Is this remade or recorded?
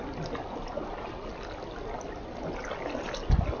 recorded